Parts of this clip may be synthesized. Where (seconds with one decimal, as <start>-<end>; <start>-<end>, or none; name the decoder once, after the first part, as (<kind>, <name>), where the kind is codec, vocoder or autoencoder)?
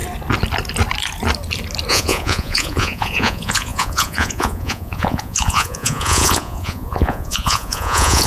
1.9-8.3 (vocoder, Vocos)